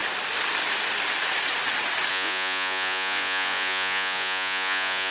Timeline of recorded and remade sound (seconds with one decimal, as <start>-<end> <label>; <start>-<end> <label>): 0.0-2.1 recorded; 2.1-5.1 remade